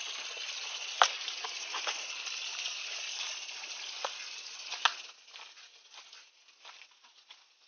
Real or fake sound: real